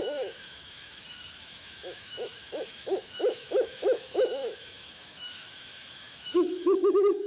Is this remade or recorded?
remade